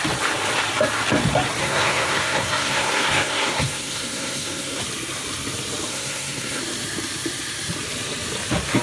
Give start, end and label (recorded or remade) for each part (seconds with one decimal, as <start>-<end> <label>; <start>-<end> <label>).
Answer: 0.0-1.6 recorded; 1.6-4.8 remade; 4.8-5.9 recorded; 5.9-6.6 remade; 6.6-8.8 recorded